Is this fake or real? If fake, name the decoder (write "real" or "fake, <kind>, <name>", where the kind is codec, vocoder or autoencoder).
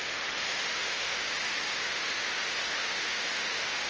fake, autoencoder, DAC-VAE